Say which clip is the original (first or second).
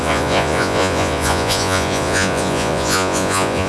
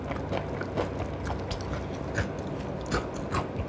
second